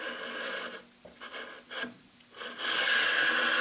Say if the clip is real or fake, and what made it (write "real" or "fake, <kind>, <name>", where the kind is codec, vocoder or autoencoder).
real